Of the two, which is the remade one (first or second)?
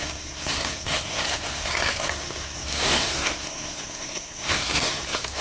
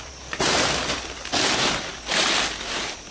first